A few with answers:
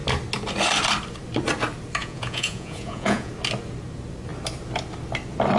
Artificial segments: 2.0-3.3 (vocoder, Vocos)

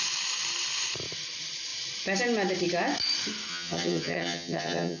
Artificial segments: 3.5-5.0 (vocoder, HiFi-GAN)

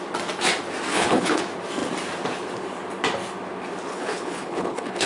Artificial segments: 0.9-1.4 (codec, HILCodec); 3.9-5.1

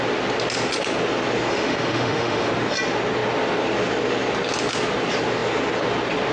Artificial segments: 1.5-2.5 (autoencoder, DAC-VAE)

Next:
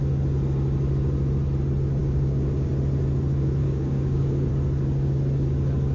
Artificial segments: 2.0-2.7 (codec, DAC); 3.6-4.5